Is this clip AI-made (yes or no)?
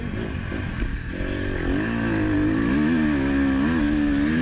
no